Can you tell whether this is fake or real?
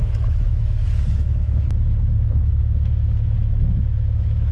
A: fake